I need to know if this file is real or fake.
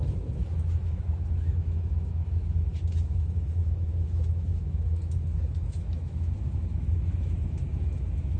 fake